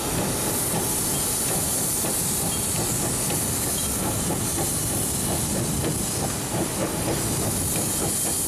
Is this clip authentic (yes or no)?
yes